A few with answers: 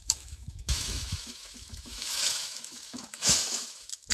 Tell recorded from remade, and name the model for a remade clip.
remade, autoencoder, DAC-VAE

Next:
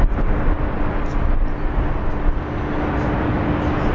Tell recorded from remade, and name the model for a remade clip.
recorded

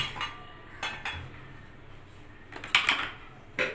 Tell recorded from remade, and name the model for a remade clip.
recorded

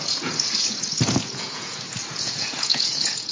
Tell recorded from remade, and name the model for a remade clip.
remade, vocoder, Vocos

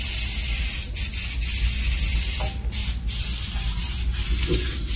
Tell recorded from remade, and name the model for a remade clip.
recorded